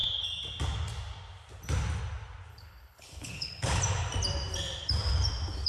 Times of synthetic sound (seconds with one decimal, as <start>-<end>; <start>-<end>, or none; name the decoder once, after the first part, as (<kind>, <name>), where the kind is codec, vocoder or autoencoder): 2.5-3.8 (codec, HILCodec)